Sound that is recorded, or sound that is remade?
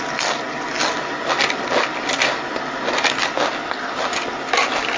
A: recorded